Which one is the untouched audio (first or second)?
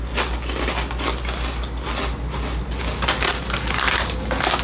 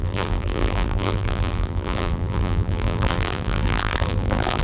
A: first